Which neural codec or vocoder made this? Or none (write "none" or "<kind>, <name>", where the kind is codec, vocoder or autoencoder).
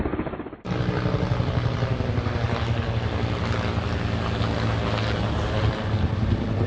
none